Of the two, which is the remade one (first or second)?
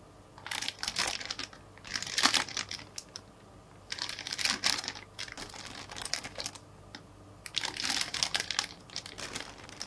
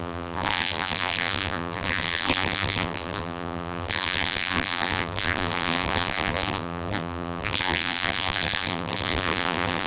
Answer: second